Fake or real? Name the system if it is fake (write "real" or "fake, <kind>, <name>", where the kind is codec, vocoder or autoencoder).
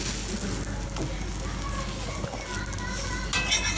real